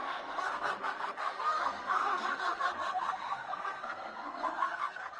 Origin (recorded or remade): remade